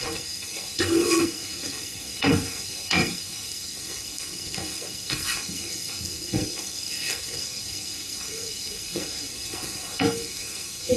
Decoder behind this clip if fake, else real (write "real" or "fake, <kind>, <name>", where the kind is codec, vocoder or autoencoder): fake, codec, SNAC